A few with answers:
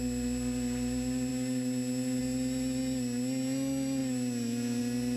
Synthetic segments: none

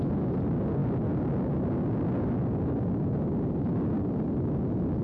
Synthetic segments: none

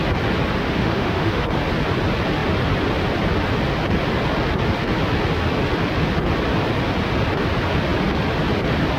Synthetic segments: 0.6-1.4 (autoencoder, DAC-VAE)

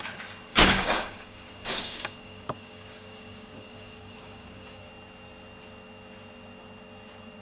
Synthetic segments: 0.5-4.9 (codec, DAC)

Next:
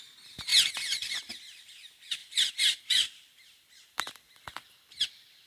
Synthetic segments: 2.2-5.5 (vocoder, BigVGAN v2)

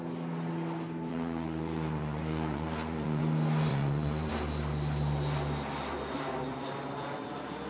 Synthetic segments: 1.1-3.2 (vocoder, Vocos); 3.7-4.3